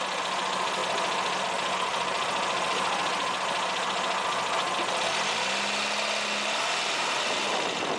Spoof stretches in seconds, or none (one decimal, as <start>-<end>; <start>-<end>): none